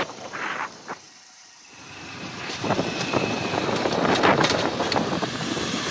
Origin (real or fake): fake